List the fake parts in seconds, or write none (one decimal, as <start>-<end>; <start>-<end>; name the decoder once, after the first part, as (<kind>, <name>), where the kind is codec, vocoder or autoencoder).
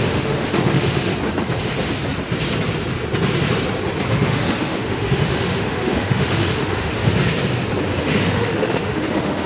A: 0.0-1.1 (autoencoder, DAC-VAE); 4.1-7.1; 8.0-9.5